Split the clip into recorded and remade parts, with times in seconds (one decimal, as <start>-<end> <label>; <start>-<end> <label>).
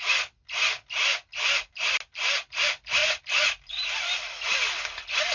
0.0-5.3 recorded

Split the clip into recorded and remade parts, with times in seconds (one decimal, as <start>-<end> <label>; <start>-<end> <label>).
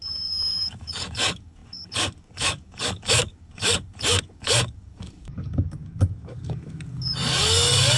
0.0-8.0 remade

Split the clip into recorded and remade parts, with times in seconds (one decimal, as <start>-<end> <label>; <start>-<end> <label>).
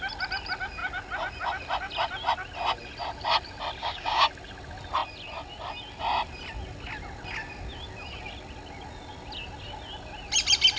0.0-3.8 recorded; 3.8-4.3 remade; 4.3-10.8 recorded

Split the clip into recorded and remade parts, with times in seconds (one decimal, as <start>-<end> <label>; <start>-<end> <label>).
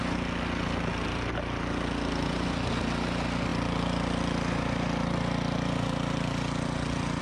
0.0-7.2 recorded